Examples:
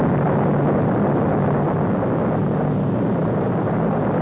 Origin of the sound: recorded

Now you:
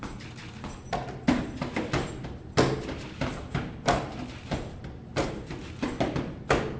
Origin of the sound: recorded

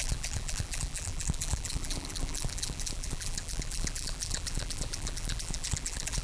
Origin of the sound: remade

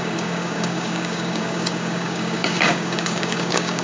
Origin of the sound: remade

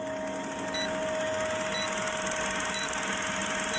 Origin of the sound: recorded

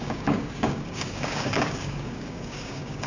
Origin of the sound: remade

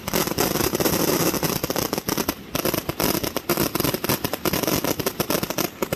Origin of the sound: remade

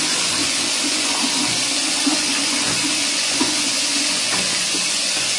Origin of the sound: remade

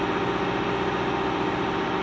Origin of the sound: recorded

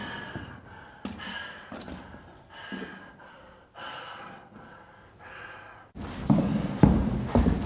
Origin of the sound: recorded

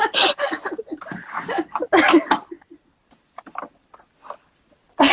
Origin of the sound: recorded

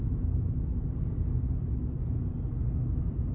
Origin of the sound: recorded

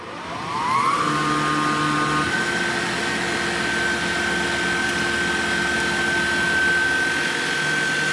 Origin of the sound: recorded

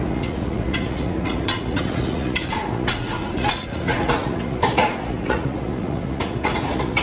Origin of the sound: remade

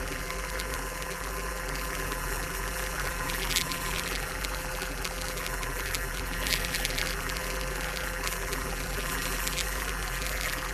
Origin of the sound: remade